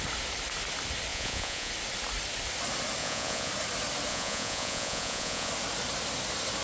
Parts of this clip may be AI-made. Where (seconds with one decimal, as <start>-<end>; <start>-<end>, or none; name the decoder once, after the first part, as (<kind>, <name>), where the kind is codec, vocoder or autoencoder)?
1.1-1.7 (vocoder, Vocos); 3.0-3.5; 4.1-5.5